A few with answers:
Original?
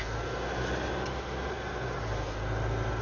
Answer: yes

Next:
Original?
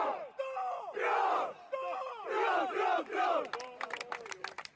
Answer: yes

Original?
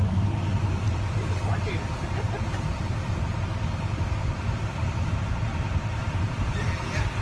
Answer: yes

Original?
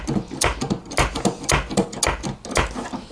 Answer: yes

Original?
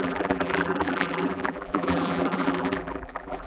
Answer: no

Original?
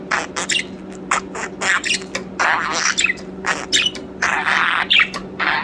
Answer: yes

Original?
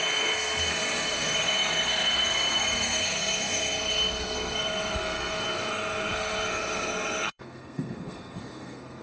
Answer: no